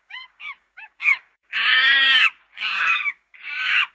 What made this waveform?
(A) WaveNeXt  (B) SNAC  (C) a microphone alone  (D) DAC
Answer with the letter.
D